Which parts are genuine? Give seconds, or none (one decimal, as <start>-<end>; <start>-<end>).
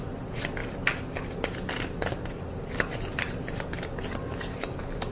0.0-5.1